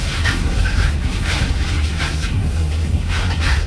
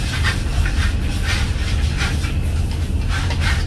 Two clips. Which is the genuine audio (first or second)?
second